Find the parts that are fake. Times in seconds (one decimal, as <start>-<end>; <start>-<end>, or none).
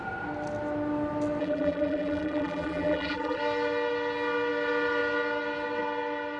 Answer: 1.4-3.4